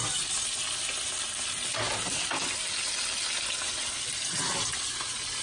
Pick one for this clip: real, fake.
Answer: real